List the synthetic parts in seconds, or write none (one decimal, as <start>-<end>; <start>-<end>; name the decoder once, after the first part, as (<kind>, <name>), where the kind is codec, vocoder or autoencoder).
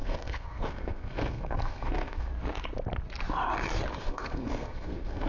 0.0-2.3 (codec, SNAC); 4.0-5.3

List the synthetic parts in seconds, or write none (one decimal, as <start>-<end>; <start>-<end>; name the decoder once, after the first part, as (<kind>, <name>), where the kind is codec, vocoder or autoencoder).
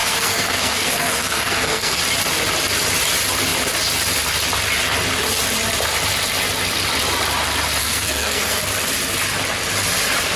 0.0-2.0 (codec, SNAC); 7.8-8.6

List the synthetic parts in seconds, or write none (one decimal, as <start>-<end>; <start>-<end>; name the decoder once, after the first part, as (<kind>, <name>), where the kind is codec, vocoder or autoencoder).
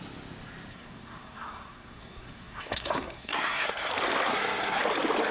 0.7-3.9 (codec, SNAC); 4.3-4.8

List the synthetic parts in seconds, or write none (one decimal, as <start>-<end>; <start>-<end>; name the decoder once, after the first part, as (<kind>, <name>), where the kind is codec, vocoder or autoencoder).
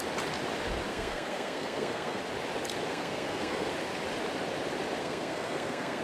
0.9-2.2 (codec, SNAC); 2.9-3.7; 5.0-6.0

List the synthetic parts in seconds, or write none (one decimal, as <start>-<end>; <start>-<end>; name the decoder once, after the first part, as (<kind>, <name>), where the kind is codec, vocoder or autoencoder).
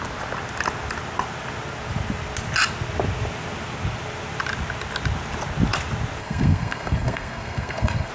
6.2-8.1 (codec, SNAC)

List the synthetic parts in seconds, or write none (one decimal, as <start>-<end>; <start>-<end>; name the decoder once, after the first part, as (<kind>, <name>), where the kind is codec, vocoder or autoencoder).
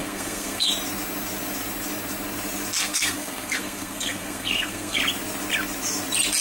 0.0-0.7 (codec, SNAC); 2.8-5.0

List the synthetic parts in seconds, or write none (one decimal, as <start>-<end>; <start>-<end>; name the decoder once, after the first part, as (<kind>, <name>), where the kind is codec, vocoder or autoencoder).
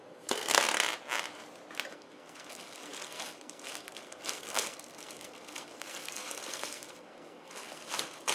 0.0-0.6 (codec, SNAC); 1.9-8.3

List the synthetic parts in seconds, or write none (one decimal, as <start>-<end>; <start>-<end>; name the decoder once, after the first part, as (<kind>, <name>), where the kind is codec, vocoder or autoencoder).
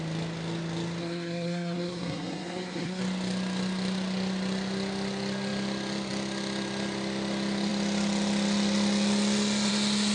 1.0-3.0 (codec, SNAC)